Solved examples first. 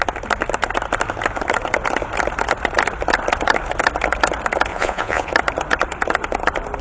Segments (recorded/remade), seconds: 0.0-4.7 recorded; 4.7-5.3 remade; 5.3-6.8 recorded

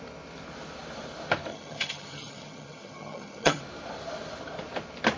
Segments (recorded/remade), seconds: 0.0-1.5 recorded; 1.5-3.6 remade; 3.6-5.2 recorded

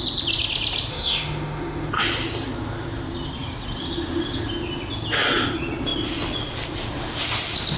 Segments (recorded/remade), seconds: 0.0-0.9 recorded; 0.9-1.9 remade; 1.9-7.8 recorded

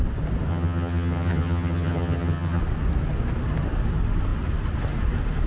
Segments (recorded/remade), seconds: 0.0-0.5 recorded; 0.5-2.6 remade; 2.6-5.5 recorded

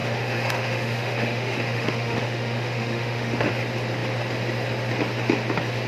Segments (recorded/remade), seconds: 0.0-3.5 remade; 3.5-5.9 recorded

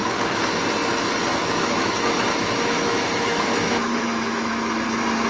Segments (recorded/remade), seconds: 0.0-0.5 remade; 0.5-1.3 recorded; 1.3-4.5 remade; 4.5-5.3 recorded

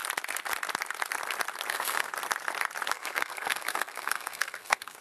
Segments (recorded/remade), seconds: 0.0-1.7 recorded; 1.7-2.1 remade; 2.1-2.9 recorded; 2.9-5.0 remade